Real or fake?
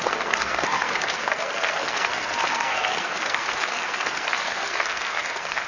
fake